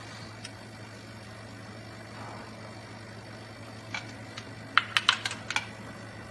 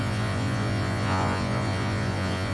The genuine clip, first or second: first